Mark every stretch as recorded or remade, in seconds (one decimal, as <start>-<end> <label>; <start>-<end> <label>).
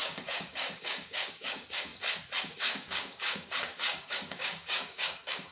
0.0-1.9 remade; 1.9-2.4 recorded; 2.4-5.5 remade